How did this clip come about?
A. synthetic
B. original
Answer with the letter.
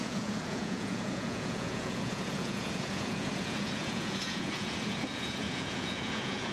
A